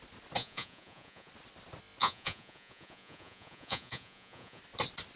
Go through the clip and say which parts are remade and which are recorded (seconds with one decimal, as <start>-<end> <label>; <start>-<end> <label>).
0.0-0.4 recorded; 0.4-1.3 remade; 1.3-2.0 recorded; 2.0-4.6 remade; 4.6-5.2 recorded